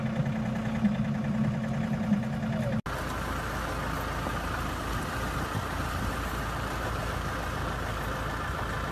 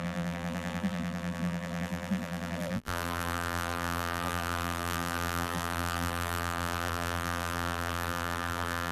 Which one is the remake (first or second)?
second